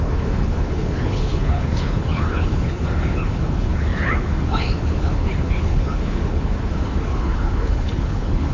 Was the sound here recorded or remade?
remade